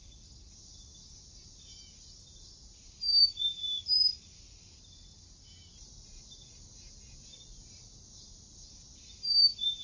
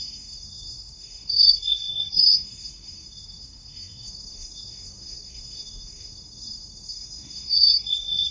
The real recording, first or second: first